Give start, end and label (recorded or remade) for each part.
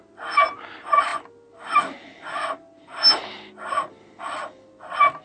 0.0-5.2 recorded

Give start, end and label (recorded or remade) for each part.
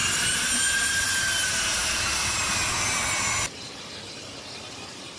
0.0-5.2 recorded